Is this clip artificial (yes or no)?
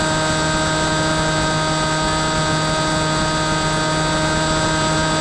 no